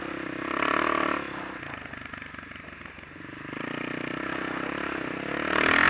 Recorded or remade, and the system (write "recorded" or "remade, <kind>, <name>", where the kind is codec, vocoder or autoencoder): recorded